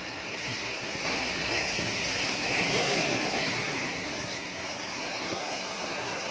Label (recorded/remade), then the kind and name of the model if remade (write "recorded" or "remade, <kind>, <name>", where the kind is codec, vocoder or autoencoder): remade, codec, SNAC